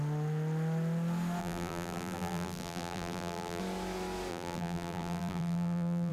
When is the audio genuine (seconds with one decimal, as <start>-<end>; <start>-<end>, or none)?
0.0-1.4; 3.6-4.3